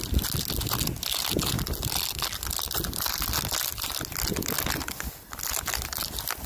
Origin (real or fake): real